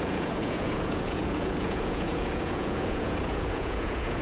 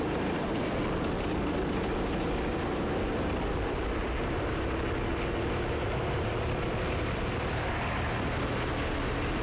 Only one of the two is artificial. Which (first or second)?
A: first